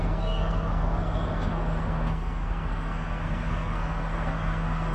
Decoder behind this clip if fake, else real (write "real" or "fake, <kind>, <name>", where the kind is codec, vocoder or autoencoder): fake, codec, SNAC